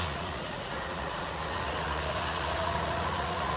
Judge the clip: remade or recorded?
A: remade